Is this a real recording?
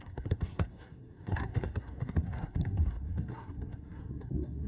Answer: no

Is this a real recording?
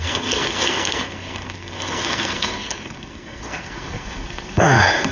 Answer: no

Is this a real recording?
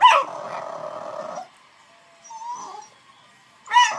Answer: yes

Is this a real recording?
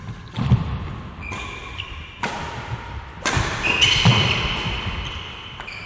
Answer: yes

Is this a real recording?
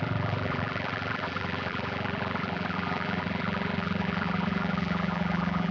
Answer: no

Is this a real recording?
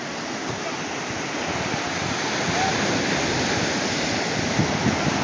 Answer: yes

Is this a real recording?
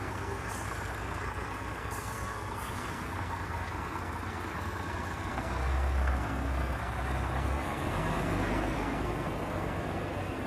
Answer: no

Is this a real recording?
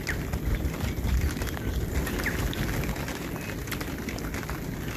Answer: yes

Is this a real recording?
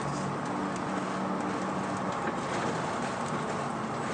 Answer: yes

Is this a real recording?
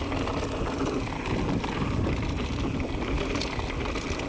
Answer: yes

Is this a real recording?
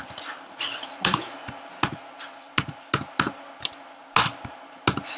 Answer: yes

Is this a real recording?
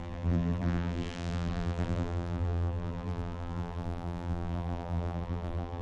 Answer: no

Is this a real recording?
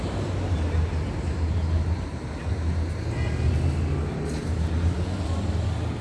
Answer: yes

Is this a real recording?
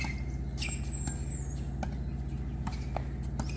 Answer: yes